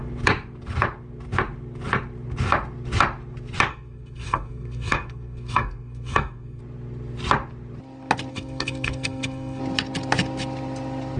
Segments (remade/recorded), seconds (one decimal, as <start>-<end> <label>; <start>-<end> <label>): 0.0-3.7 recorded; 3.7-6.6 remade; 6.6-8.3 recorded; 8.3-9.6 remade; 9.6-11.2 recorded